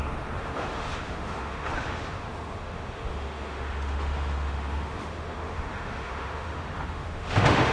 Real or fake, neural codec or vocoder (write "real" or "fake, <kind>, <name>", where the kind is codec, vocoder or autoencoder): fake, autoencoder, DAC-VAE